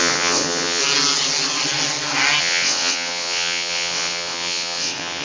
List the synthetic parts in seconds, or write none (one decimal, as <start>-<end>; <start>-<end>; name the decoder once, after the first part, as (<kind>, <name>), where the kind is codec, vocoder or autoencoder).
0.0-0.8 (vocoder, WaveNeXt); 2.4-5.2